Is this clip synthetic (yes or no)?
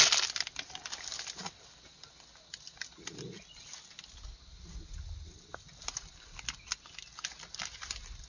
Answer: no